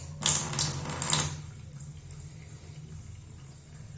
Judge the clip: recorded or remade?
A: recorded